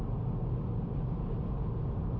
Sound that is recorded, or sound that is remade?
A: recorded